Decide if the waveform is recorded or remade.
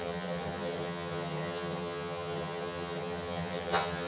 remade